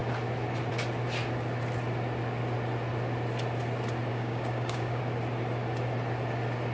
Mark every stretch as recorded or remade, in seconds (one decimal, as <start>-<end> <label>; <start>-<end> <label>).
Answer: 0.0-4.1 recorded; 4.1-5.0 remade; 5.0-6.7 recorded